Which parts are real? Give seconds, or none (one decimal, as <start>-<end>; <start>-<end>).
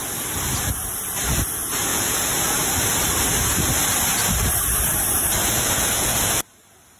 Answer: 0.0-1.9; 2.6-5.4; 6.3-7.0